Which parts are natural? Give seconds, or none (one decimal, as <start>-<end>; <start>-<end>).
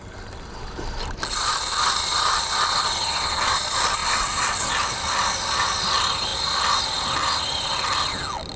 0.0-8.6